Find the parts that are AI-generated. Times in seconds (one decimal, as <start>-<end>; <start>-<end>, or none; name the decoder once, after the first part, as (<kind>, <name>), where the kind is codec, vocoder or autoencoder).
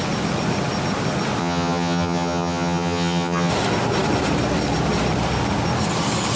1.4-3.5 (vocoder, HiFi-GAN)